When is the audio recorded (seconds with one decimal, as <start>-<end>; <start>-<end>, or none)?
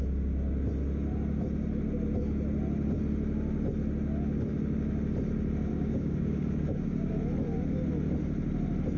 0.0-5.7; 7.1-9.0